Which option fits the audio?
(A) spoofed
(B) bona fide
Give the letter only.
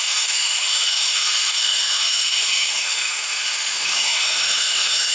A